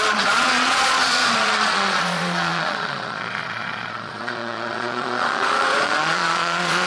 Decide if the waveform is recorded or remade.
remade